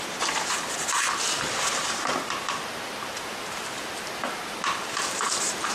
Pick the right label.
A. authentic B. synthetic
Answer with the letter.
B